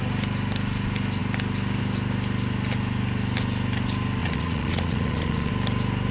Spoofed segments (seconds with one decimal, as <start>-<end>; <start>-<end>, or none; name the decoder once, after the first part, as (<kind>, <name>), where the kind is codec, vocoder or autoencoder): 4.2-5.5 (vocoder, Vocos)